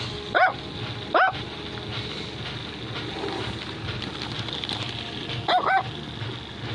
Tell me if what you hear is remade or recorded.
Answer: recorded